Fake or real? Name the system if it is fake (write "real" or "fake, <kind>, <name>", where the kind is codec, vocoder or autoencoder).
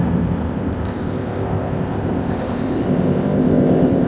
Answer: fake, codec, ZipCodec